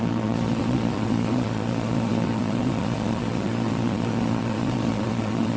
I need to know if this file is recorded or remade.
remade